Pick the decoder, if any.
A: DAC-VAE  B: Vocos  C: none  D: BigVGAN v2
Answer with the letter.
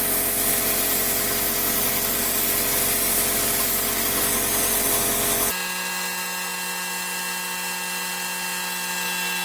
C